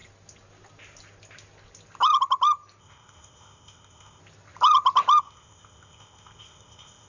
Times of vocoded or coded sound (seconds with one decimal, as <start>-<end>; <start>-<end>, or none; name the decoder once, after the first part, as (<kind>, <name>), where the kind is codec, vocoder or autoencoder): 2.8-4.2 (codec, ZipCodec); 5.2-7.1